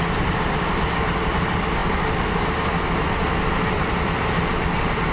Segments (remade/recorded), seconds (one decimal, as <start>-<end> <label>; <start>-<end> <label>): 0.0-5.1 recorded